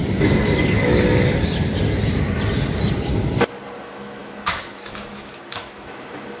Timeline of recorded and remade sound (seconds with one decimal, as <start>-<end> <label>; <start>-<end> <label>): 0.0-3.8 recorded; 3.8-6.4 remade